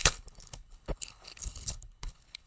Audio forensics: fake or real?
fake